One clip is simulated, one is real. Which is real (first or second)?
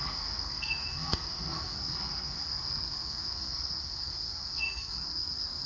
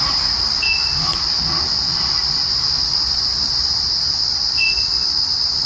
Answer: second